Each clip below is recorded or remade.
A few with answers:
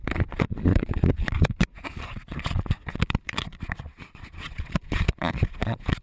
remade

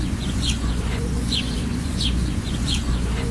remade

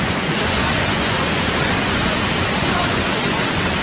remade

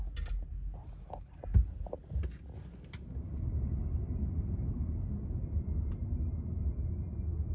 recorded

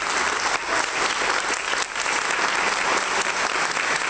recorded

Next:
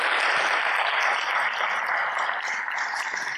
recorded